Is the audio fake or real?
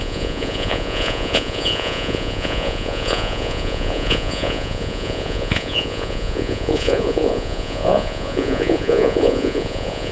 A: fake